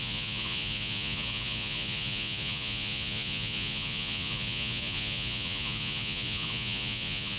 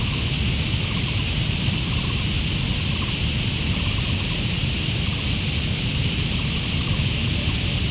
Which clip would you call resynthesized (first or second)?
first